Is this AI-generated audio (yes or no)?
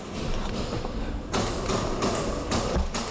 no